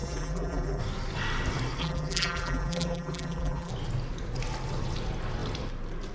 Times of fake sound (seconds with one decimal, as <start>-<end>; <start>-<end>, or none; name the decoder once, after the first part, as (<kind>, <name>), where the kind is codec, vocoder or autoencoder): 0.0-0.8 (vocoder, BigVGAN v2); 1.8-3.7